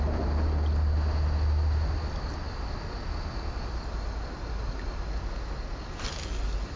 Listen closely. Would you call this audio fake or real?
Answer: real